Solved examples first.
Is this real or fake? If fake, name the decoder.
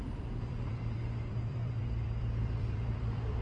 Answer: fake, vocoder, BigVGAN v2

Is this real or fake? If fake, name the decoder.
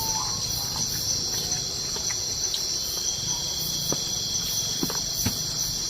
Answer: real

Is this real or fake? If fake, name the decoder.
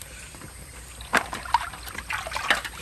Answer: fake, vocoder, BigVGAN v2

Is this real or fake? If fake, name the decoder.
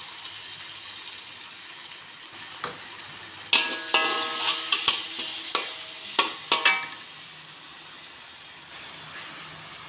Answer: real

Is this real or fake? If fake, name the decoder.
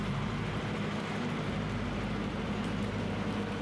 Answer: real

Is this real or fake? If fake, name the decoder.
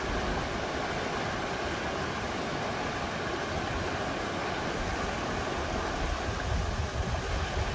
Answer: real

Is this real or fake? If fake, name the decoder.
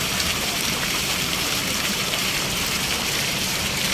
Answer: fake, vocoder, BigVGAN v2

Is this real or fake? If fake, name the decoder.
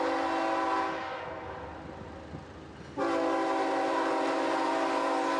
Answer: real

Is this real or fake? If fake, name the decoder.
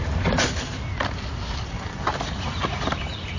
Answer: real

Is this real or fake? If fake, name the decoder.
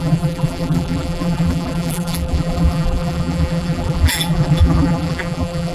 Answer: fake, vocoder, BigVGAN v2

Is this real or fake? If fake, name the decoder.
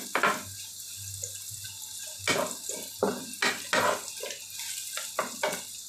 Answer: real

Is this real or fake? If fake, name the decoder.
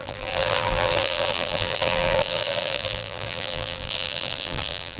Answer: fake, vocoder, BigVGAN v2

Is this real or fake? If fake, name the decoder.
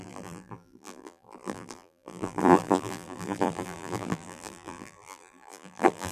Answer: fake, vocoder, BigVGAN v2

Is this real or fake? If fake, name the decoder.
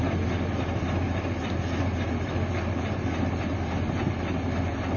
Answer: fake, vocoder, BigVGAN v2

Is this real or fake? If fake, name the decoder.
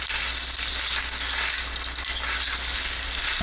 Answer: real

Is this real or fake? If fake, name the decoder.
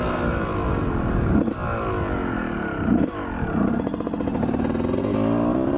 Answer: real